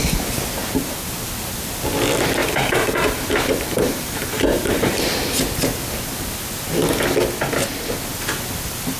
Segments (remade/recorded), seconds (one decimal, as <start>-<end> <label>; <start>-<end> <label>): 0.0-0.6 recorded; 0.6-1.1 remade; 1.1-2.4 recorded; 2.4-5.4 remade; 5.4-9.0 recorded